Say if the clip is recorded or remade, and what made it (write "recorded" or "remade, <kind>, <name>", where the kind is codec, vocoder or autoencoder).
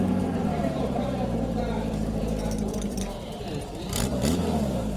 remade, vocoder, BigVGAN v2